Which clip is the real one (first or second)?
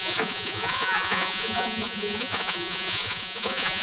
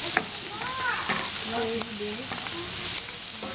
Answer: second